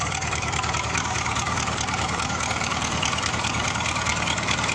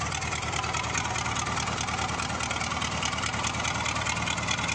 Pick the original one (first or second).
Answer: second